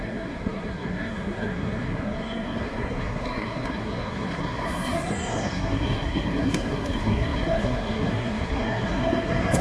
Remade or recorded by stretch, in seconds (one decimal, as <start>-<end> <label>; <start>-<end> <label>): 0.0-9.6 remade